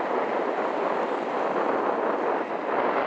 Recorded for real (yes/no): yes